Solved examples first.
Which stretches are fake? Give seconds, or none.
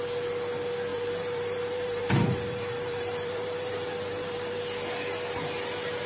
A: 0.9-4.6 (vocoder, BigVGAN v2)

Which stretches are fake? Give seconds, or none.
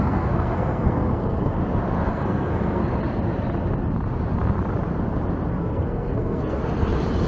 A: 0.0-1.6 (codec, SNAC); 2.1-2.8; 5.5-6.6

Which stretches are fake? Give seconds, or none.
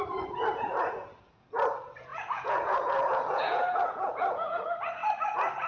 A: 0.5-1.1 (vocoder, Vocos); 2.1-4.6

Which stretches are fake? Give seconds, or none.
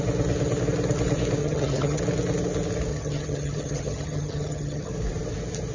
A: 1.4-2.0 (vocoder, HiFi-GAN); 2.9-4.9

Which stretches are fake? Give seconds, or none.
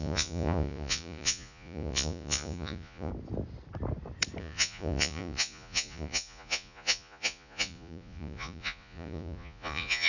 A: 0.0-3.1 (vocoder, Vocos); 4.4-10.1